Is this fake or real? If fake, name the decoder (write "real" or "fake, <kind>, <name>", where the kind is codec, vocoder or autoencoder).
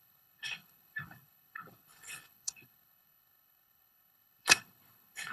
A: fake, codec, HILCodec